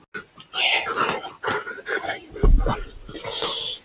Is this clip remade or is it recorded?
recorded